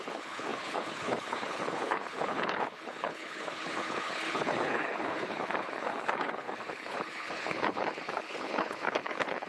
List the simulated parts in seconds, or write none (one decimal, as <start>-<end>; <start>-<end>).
0.0-9.5